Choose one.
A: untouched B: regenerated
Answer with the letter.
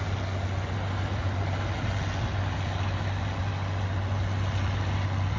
A